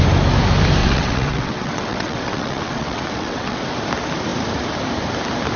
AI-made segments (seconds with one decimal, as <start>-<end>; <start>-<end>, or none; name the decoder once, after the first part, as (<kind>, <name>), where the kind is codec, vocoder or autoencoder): 0.8-3.6 (vocoder, WaveNeXt)